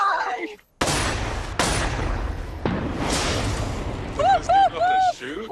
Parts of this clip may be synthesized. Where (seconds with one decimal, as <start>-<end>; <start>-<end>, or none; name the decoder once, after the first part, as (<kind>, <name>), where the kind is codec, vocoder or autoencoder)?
0.0-0.7 (codec, HILCodec); 1.8-2.6; 5.1-5.5